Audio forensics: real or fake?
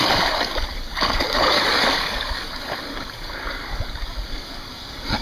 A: fake